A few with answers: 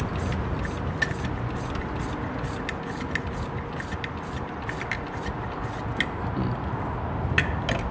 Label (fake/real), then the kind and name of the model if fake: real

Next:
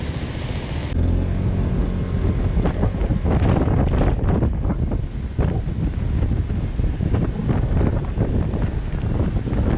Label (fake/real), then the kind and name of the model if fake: real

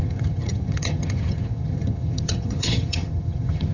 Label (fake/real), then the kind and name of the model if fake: fake, vocoder, HiFi-GAN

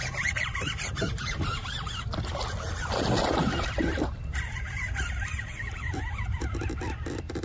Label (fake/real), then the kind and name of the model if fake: fake, vocoder, BigVGAN v2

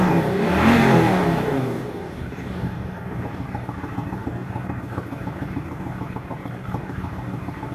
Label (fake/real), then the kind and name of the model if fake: fake, codec, DAC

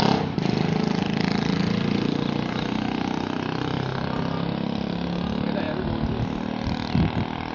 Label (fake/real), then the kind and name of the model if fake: real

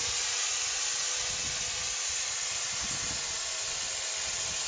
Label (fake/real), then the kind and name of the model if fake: real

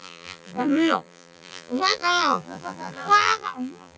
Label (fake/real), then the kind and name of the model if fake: fake, vocoder, BigVGAN v2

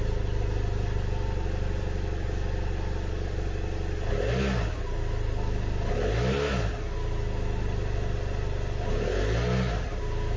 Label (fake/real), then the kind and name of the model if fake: real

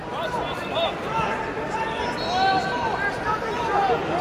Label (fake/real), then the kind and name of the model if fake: real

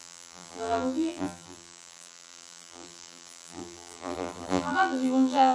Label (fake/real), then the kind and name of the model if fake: fake, vocoder, BigVGAN v2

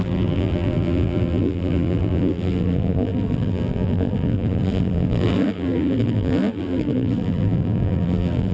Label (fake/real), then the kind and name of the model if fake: fake, vocoder, BigVGAN v2